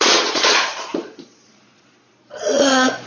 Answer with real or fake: fake